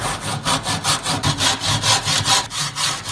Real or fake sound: real